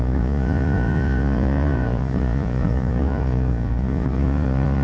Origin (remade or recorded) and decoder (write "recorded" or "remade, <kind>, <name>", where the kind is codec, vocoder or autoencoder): remade, vocoder, Vocos